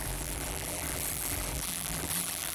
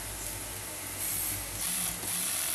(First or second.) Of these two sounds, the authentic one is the second